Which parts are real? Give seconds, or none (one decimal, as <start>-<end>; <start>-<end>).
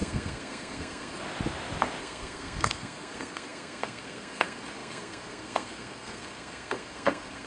1.2-2.0